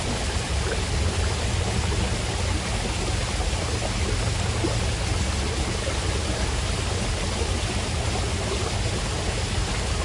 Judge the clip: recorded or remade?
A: recorded